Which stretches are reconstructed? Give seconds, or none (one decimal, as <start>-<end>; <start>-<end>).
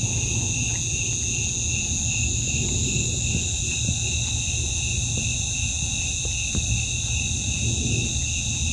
none